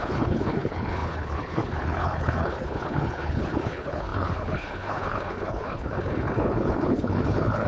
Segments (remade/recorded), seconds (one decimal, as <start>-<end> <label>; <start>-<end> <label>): 0.0-7.7 remade